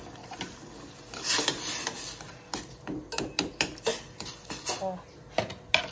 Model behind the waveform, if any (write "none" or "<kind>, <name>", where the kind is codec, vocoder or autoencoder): none